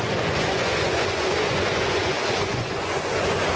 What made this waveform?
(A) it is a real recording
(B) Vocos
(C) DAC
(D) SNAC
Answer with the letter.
B